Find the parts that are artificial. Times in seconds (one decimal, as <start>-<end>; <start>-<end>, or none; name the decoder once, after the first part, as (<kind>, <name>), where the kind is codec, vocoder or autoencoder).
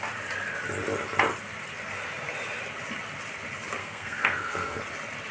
3.8-4.8 (codec, SNAC)